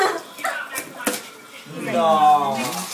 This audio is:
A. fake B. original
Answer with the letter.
B